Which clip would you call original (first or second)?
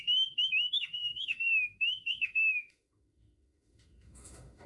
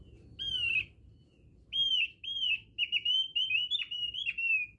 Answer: second